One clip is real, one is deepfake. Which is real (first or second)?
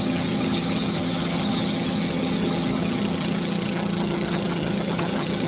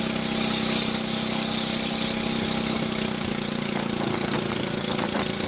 second